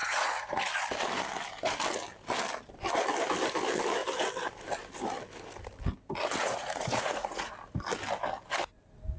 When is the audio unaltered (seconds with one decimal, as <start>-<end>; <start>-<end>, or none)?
0.6-6.4; 7.5-9.2